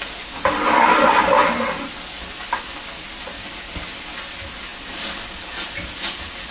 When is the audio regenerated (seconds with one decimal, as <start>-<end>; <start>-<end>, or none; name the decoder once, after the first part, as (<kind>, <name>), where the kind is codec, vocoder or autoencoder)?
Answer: 0.0-1.4 (vocoder, BigVGAN v2); 2.1-4.7